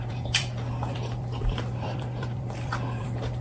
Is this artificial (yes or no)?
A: yes